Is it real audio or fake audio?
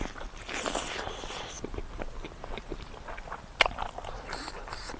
real